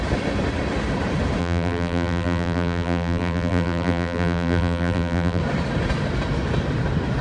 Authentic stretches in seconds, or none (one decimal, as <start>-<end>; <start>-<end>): 0.0-1.4; 5.4-7.2